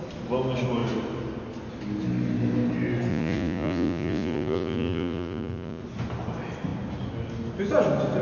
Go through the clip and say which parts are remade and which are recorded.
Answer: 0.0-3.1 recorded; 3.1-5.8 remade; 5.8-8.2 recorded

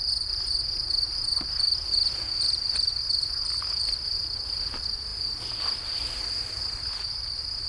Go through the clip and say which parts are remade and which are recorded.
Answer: 0.0-7.7 recorded

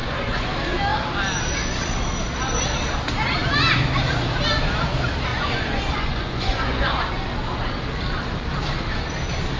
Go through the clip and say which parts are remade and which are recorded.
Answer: 0.0-0.5 remade; 0.5-5.3 recorded; 5.3-6.9 remade; 6.9-9.6 recorded

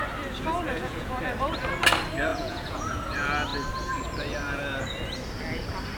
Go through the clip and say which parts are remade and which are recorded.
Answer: 0.0-0.7 recorded; 0.7-1.2 remade; 1.2-2.3 recorded; 2.3-3.0 remade; 3.0-6.0 recorded